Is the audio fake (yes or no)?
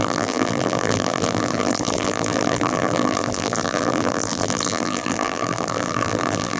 yes